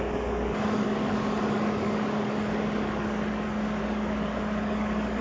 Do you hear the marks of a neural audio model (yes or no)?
yes